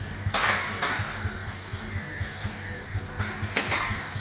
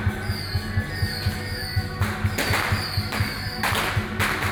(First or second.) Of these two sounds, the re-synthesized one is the first